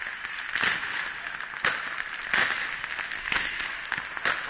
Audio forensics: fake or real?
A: real